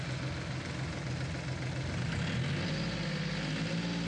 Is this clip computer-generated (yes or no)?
no